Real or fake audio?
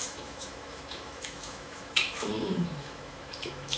fake